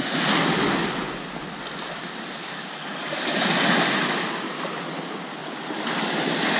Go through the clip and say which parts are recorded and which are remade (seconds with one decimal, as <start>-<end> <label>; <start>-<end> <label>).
0.0-2.4 recorded; 2.4-3.4 remade; 3.4-6.6 recorded